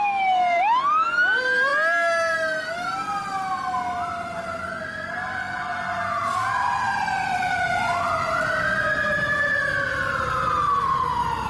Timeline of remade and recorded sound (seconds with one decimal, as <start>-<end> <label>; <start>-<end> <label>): 0.0-11.5 recorded